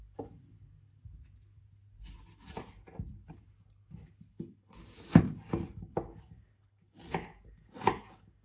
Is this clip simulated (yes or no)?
no